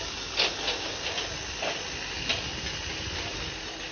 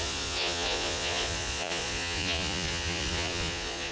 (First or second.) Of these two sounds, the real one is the first